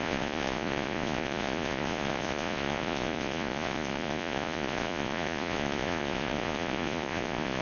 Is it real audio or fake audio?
fake